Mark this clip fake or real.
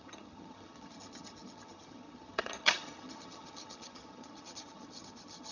fake